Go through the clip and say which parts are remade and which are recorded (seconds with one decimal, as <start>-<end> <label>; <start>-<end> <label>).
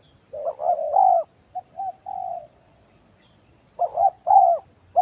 0.0-2.3 recorded; 2.3-4.4 remade; 4.4-5.0 recorded